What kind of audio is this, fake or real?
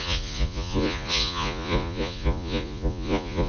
fake